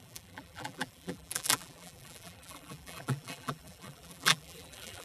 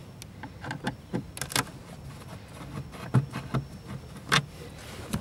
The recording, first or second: second